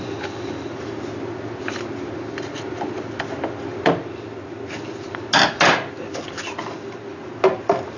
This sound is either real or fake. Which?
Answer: real